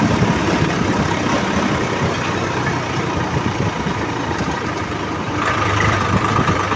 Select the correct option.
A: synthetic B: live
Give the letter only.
A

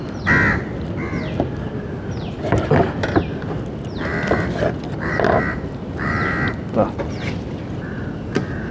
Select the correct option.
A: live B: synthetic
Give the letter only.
A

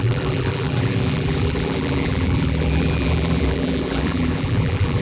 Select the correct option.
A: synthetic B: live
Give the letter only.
A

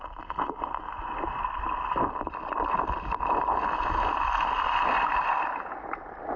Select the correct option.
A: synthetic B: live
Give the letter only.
B